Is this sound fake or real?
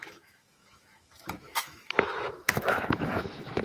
fake